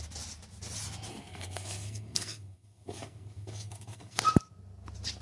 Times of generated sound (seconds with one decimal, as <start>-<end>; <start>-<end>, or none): 1.1-4.2